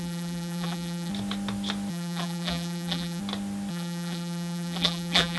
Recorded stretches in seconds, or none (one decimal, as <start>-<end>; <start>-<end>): 1.1-1.9; 3.2-3.7